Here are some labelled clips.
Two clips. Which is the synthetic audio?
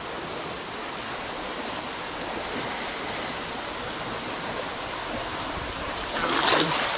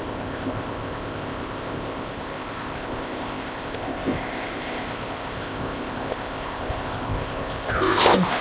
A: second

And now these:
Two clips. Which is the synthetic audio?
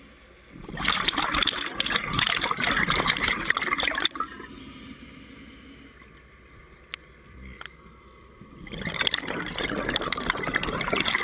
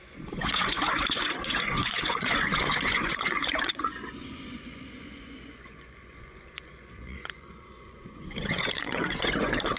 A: second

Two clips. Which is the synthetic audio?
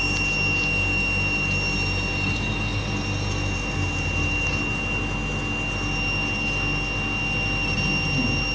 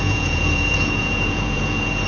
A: second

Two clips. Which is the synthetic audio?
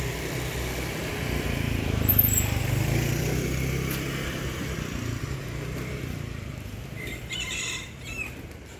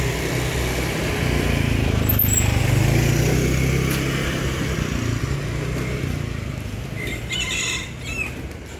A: first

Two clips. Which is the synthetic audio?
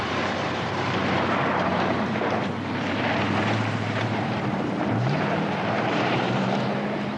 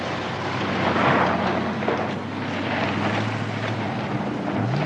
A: first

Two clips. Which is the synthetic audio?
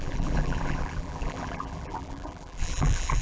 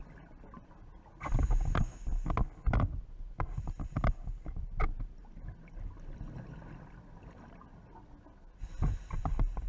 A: first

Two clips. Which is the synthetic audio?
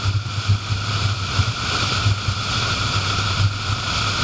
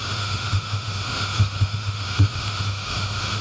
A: second